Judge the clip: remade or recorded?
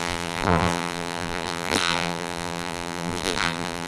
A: remade